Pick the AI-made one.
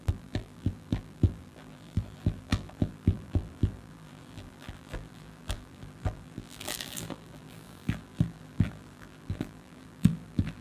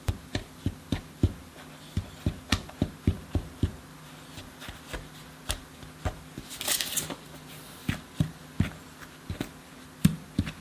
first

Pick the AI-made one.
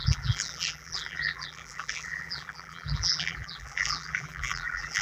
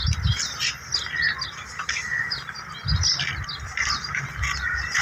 first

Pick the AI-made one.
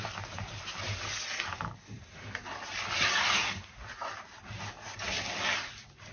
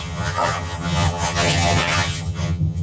second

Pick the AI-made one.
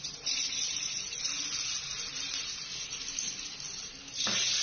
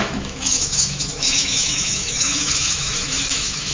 second